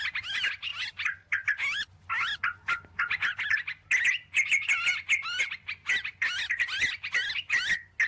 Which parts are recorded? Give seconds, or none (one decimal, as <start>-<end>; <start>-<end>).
0.0-8.1